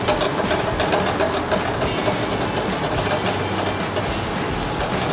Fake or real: real